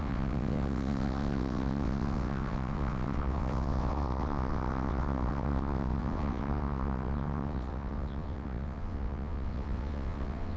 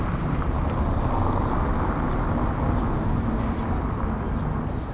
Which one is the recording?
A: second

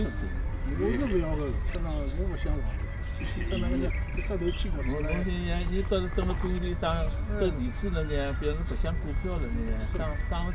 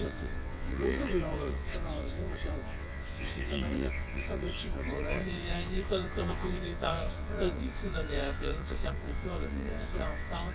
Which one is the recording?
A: first